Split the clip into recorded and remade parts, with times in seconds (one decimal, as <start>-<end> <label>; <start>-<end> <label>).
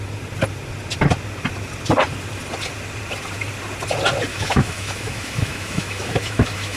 0.0-4.3 recorded; 4.3-6.8 remade